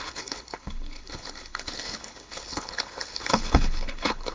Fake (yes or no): yes